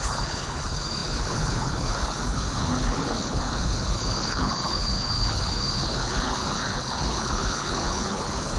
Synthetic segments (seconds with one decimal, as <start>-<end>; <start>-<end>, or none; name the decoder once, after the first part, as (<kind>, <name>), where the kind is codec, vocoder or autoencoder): 0.0-8.6 (codec, HILCodec)